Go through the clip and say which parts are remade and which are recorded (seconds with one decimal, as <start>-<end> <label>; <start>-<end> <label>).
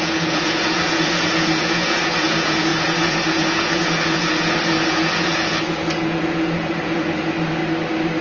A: 0.0-7.6 remade; 7.6-8.2 recorded